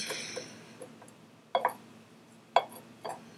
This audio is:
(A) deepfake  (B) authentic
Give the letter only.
B